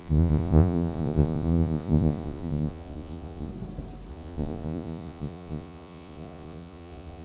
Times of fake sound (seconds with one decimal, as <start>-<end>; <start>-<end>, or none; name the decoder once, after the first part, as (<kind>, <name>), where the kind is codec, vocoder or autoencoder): 0.0-3.5 (vocoder, Vocos); 4.1-7.2